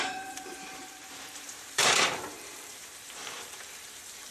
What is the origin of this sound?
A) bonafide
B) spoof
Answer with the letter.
B